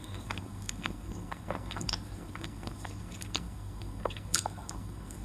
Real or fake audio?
fake